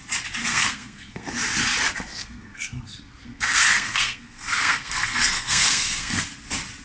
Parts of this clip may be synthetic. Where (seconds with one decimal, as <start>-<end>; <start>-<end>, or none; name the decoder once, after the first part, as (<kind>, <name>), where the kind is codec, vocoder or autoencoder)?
0.4-1.3 (codec, SNAC); 2.1-6.2